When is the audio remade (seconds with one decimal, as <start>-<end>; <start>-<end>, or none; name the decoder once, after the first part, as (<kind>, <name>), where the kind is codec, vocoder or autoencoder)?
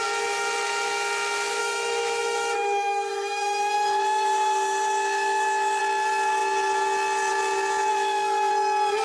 1.6-5.8 (autoencoder, DAC-VAE); 7.9-8.5